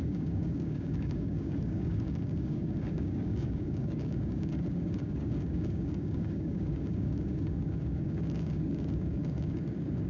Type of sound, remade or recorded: remade